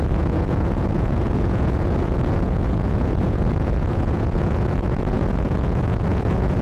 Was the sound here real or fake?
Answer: fake